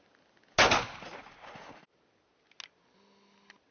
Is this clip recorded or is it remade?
recorded